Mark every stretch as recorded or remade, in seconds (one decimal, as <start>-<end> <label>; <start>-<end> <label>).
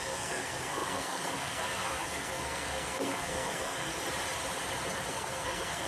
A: 0.0-3.9 remade; 3.9-5.1 recorded; 5.1-5.9 remade